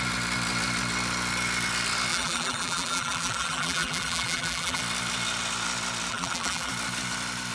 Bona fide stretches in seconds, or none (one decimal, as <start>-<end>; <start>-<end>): 0.0-2.1; 4.8-6.1; 6.7-7.5